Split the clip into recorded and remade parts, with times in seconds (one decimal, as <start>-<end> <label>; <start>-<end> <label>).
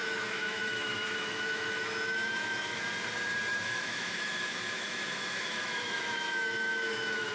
0.0-2.8 remade; 2.8-3.5 recorded; 3.5-7.3 remade